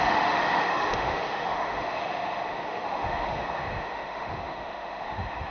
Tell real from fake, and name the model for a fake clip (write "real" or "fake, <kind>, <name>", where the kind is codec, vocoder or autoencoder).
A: fake, autoencoder, DAC-VAE